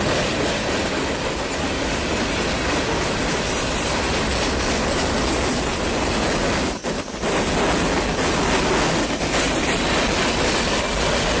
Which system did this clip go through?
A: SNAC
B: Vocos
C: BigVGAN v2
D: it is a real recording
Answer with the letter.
D